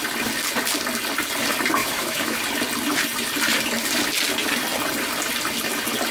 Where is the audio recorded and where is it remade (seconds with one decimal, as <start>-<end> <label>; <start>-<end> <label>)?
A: 0.0-1.8 recorded; 1.8-2.4 remade; 2.4-6.1 recorded